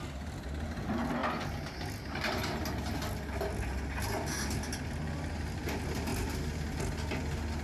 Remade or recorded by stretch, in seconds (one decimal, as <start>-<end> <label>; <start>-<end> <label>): 0.0-7.6 recorded

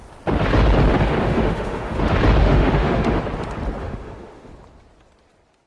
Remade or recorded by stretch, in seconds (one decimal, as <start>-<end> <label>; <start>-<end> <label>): 0.0-1.2 recorded; 1.2-2.0 remade; 2.0-2.4 recorded; 2.4-3.2 remade; 3.2-3.8 recorded; 3.8-4.5 remade; 4.5-5.7 recorded

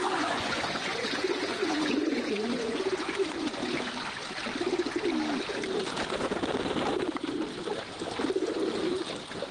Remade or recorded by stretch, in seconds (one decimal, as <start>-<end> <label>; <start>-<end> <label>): 0.0-3.7 remade; 3.7-9.5 recorded

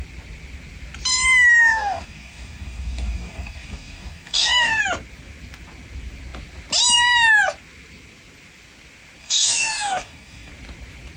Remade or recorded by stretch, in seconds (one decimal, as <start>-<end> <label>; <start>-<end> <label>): 0.0-1.6 recorded; 1.6-4.8 remade; 4.8-9.2 recorded; 9.2-10.5 remade; 10.5-11.2 recorded

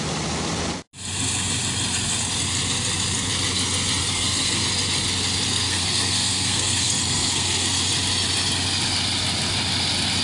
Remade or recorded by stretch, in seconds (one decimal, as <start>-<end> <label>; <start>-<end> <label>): 0.0-4.0 recorded; 4.0-4.6 remade; 4.6-5.5 recorded; 5.5-7.8 remade; 7.8-10.2 recorded

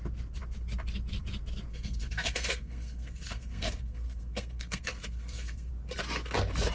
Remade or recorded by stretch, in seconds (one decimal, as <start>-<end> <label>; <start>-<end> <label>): 0.0-1.7 recorded; 1.7-5.7 remade; 5.7-6.7 recorded

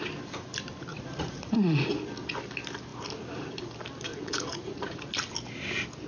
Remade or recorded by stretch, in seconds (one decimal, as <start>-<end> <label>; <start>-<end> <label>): 0.0-0.9 recorded; 0.9-1.9 remade; 1.9-4.1 recorded; 4.1-5.0 remade; 5.0-6.1 recorded